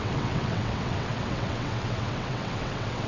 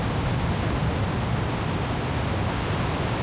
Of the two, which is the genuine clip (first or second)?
second